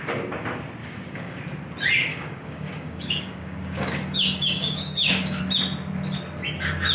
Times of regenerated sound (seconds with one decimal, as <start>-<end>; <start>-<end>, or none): 0.8-1.4; 2.1-5.4